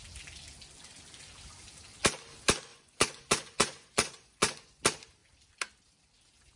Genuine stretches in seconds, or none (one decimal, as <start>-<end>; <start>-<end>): 0.0-2.7; 4.8-6.6